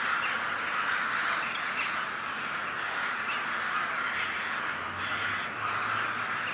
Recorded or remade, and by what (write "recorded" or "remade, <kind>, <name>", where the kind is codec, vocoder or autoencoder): recorded